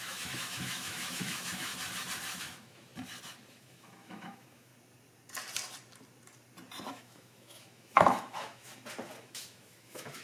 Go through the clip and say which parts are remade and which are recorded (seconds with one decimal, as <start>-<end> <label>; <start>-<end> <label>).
0.0-1.7 remade; 1.7-2.4 recorded; 2.4-2.9 remade; 2.9-3.5 recorded; 3.5-4.7 remade; 4.7-6.9 recorded; 6.9-8.7 remade; 8.7-9.2 recorded; 9.2-10.2 remade